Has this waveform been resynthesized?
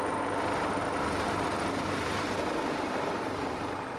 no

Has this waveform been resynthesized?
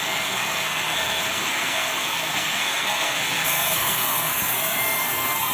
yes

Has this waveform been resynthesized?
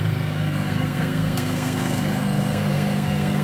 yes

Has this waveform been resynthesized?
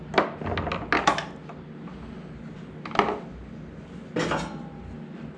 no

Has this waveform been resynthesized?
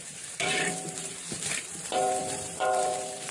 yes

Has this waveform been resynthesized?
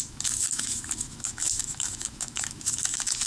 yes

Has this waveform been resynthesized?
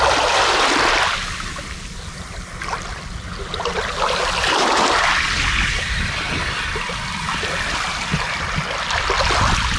no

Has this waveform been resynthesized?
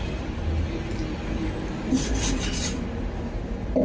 no